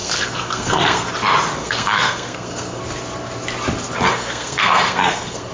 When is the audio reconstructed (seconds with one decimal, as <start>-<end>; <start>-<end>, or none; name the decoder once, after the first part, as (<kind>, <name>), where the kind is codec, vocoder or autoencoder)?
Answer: 0.0-1.1 (codec, SNAC); 1.6-2.8; 4.1-5.5